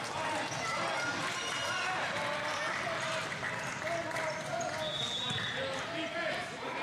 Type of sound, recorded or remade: recorded